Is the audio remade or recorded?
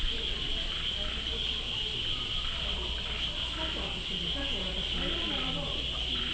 recorded